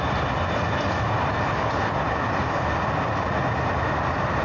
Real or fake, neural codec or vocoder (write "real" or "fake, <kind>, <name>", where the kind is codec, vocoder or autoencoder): real